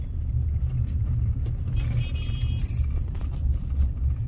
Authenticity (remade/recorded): remade